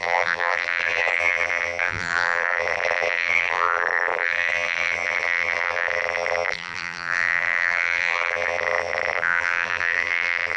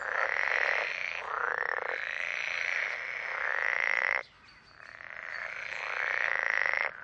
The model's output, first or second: first